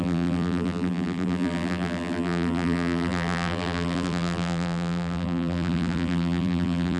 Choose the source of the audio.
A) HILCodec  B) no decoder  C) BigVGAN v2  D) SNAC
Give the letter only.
C